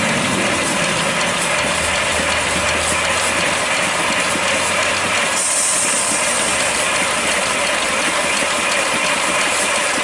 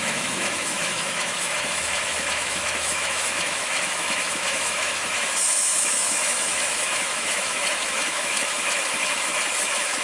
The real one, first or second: first